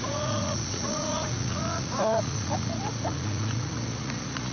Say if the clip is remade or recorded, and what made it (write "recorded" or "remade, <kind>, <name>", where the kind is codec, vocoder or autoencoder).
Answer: remade, vocoder, Vocos